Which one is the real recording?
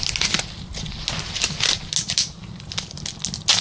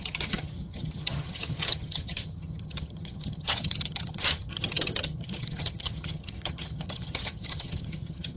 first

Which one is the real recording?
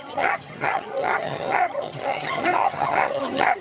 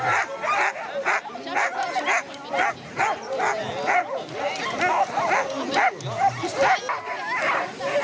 second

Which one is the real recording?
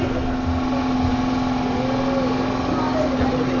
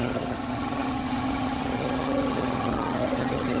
first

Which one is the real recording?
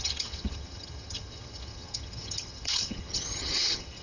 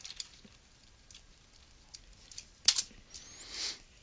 second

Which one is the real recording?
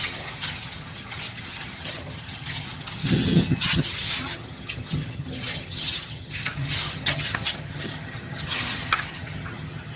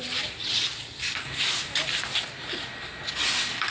second